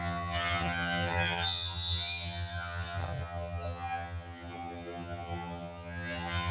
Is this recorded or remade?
remade